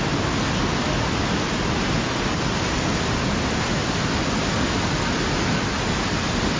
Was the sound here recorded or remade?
recorded